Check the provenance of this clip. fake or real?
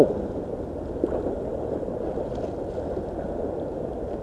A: real